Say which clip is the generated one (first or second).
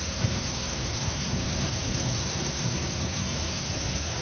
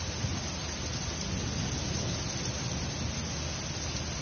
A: first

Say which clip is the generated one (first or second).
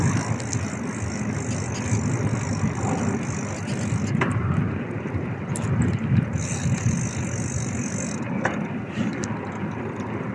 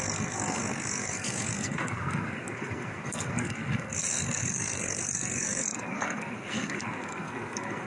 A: second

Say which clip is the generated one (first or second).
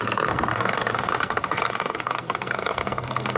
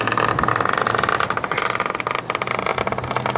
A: first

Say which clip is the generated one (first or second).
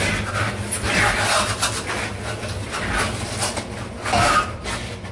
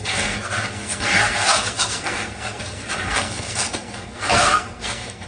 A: second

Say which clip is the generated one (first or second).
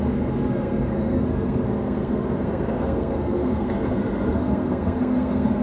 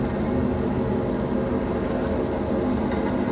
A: first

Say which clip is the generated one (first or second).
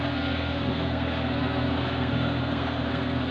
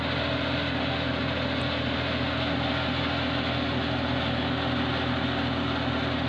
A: first